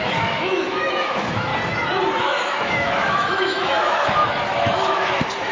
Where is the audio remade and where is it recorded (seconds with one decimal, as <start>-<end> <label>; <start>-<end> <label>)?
0.0-1.5 remade; 1.5-2.2 recorded; 2.2-5.5 remade